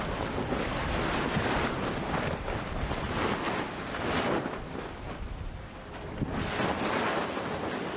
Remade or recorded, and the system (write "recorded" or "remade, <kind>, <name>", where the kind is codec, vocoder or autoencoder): recorded